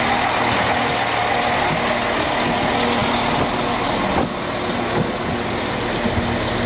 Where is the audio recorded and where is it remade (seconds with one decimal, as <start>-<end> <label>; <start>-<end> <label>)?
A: 0.0-6.7 recorded